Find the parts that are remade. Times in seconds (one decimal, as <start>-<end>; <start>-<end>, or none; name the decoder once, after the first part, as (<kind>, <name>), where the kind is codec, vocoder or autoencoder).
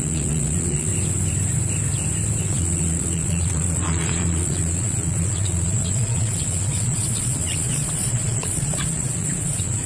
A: 0.0-0.9 (vocoder, Vocos); 2.4-9.9